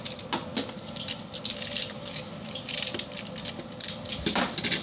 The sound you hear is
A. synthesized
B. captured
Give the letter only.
B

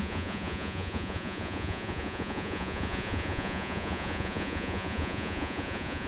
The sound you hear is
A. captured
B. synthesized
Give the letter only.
B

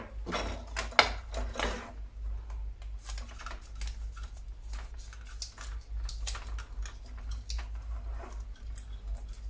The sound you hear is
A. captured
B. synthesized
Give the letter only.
A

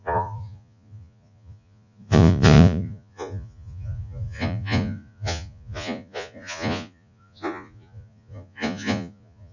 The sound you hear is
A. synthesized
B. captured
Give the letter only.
A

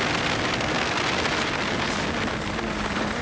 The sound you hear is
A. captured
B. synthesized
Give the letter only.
A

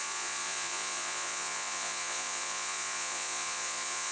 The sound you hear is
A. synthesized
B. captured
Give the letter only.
A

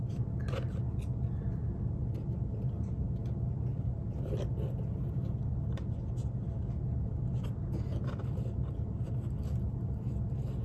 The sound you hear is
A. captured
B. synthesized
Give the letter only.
A